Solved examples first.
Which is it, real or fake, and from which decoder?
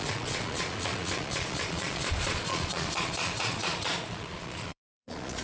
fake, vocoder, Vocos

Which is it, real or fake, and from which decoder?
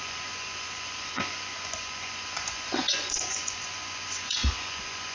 fake, vocoder, Vocos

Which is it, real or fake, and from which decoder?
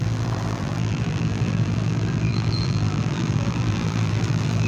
fake, vocoder, BigVGAN v2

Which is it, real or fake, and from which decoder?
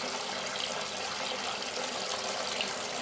real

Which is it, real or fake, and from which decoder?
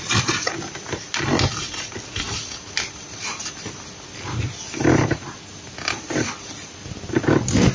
real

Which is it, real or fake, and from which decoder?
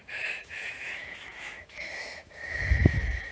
fake, autoencoder, DAC-VAE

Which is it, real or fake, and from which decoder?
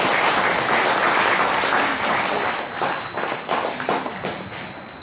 real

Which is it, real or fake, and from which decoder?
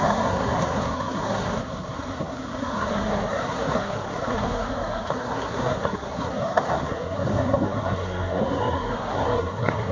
fake, codec, SNAC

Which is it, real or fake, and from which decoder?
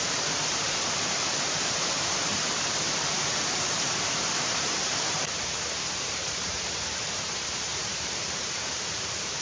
fake, vocoder, BigVGAN v2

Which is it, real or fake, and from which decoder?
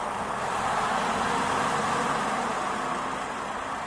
real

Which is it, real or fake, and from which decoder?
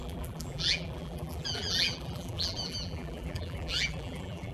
fake, vocoder, BigVGAN v2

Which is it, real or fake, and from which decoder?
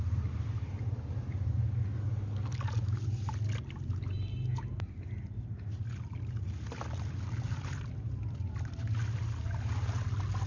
real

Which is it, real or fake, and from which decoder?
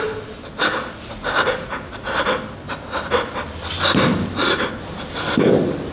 real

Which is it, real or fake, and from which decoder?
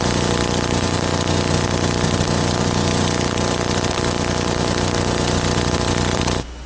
real